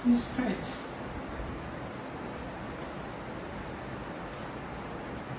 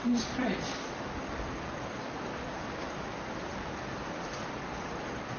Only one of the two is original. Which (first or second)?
first